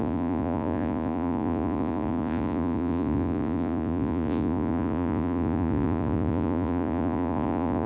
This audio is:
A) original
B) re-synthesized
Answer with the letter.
B